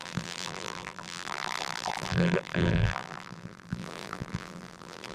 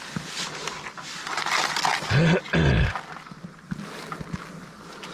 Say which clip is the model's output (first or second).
first